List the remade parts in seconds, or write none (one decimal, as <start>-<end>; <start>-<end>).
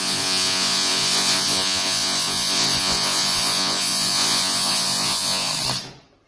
0.0-5.5